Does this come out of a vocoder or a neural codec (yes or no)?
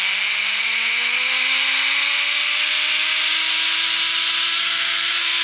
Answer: no